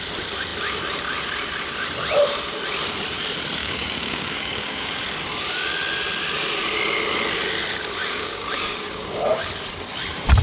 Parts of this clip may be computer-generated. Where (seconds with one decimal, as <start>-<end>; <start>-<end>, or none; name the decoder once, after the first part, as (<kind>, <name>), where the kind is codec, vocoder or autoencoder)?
3.6-5.0 (codec, DAC); 8.0-9.4